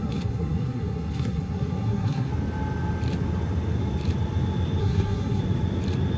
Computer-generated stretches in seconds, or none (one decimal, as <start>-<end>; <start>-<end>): 0.0-2.3; 4.8-5.4